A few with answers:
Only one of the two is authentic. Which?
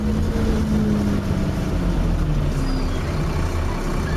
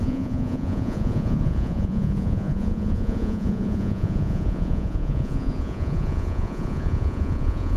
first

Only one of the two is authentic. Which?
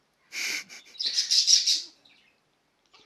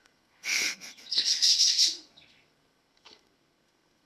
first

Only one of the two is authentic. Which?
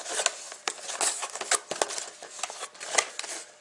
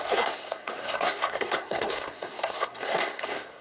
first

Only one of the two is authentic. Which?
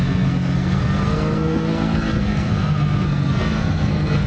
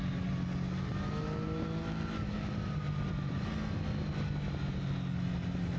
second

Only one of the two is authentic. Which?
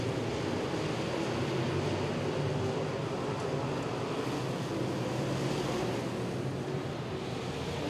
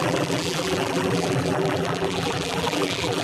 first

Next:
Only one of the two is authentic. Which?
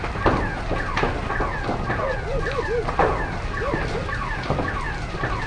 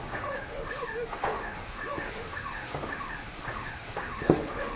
first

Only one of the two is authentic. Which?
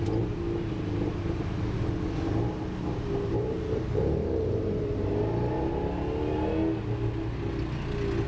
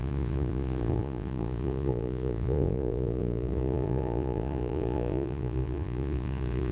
first